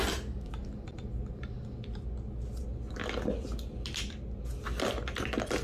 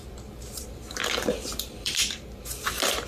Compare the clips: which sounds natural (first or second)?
first